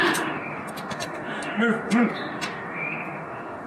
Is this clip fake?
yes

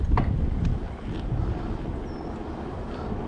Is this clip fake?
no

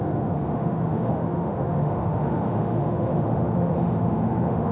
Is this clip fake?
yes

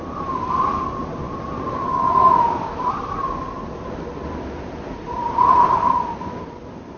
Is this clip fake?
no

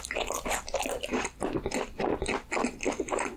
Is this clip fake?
no